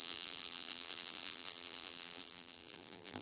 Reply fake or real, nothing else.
fake